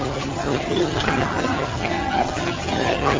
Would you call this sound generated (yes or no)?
yes